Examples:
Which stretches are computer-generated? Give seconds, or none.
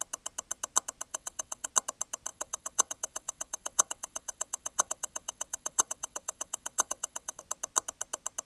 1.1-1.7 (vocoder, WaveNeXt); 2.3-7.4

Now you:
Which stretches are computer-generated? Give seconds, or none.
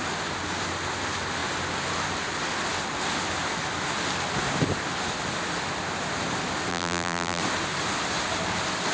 6.7-7.4 (vocoder, BigVGAN v2)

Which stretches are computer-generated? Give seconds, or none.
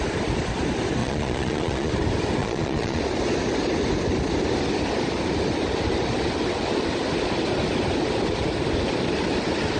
1.0-1.9 (vocoder, Vocos); 2.4-3.0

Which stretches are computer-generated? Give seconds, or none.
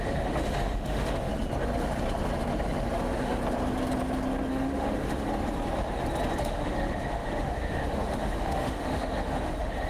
0.0-1.3 (autoencoder, DAC-VAE); 3.0-3.4; 4.5-5.3; 6.4-9.9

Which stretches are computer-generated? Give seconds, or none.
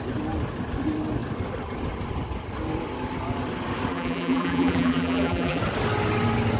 3.9-5.6 (vocoder, BigVGAN v2)